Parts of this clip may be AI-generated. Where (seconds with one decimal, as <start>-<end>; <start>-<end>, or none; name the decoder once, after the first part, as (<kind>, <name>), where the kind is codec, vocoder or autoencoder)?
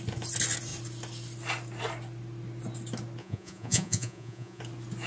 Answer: 3.2-4.6 (vocoder, Vocos)